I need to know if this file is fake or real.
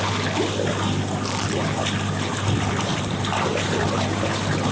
real